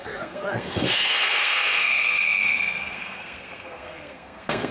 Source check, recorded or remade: remade